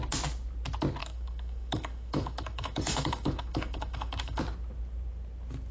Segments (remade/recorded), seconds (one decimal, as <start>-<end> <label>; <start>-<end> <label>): 0.0-1.0 recorded; 1.0-4.4 remade; 4.4-5.7 recorded